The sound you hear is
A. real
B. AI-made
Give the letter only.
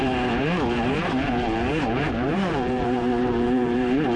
B